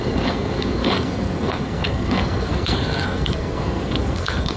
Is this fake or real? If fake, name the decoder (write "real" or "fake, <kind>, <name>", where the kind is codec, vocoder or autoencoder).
fake, codec, SNAC